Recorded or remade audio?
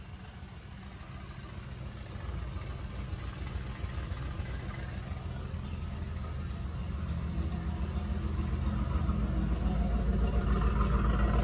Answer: recorded